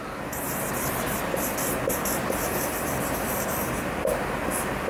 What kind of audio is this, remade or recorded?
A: recorded